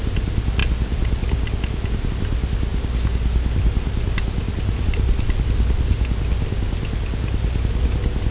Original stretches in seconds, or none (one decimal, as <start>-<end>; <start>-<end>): 0.0-8.3